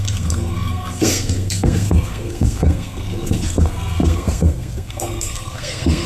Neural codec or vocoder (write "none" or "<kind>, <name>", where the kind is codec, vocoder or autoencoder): codec, SNAC